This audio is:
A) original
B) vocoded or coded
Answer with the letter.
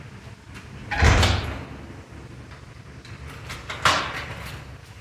A